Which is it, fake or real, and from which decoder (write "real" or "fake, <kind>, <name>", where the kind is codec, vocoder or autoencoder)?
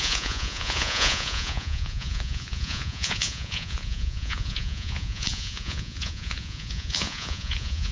fake, vocoder, Vocos